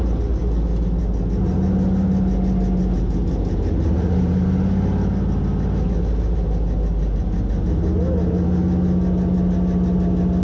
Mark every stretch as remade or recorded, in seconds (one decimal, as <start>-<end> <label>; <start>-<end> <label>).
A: 0.0-10.4 recorded